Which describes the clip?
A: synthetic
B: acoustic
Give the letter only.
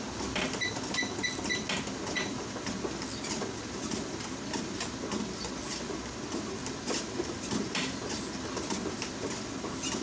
B